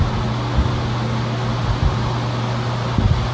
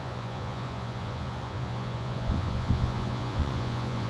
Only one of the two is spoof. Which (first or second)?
second